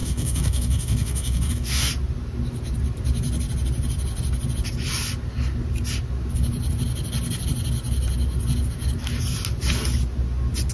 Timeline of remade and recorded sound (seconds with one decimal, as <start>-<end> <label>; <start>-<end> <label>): 0.0-1.9 remade; 1.9-10.7 recorded